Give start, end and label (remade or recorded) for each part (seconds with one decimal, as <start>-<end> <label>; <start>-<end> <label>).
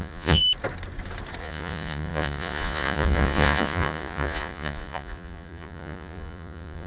0.0-0.4 remade; 0.4-1.4 recorded; 1.4-6.9 remade